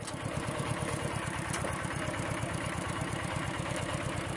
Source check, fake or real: real